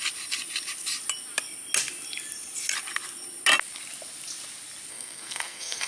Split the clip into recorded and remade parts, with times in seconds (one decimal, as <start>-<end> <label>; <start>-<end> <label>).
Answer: 0.0-4.9 recorded; 4.9-5.9 remade